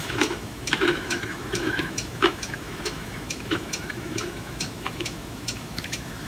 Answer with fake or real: fake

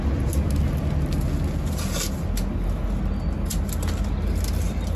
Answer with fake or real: real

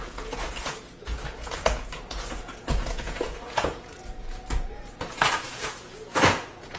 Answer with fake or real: fake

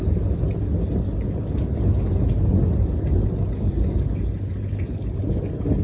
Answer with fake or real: real